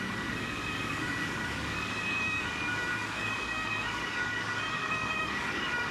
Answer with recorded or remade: remade